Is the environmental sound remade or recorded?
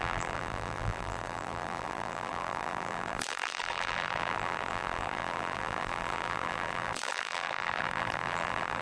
remade